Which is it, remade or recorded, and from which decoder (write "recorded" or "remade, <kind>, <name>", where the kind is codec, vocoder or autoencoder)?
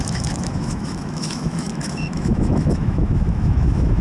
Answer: remade, autoencoder, DAC-VAE